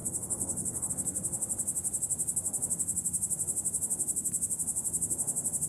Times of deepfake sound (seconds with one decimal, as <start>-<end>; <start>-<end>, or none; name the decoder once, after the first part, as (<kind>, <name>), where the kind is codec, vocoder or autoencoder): 0.0-0.9 (codec, HILCodec)

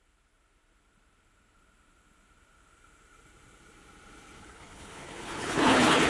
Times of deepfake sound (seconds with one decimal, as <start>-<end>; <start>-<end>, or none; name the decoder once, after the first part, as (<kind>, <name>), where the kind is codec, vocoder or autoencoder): 4.4-6.1 (codec, HILCodec)